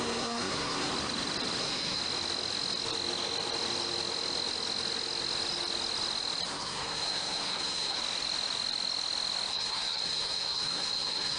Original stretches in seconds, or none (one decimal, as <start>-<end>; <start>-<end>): 0.9-1.6; 2.0-6.5; 8.0-9.5